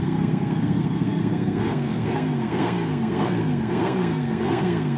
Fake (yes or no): yes